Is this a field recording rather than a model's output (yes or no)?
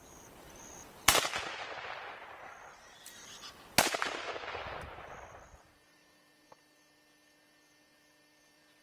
no